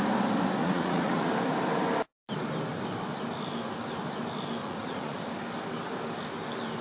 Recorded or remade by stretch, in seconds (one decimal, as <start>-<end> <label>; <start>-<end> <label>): 0.0-0.6 recorded; 0.6-1.3 remade; 1.3-4.6 recorded; 4.6-5.3 remade; 5.3-6.8 recorded